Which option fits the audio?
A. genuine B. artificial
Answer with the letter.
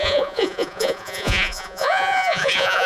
B